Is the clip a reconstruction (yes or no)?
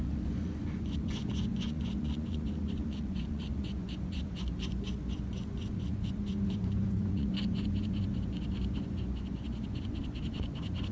yes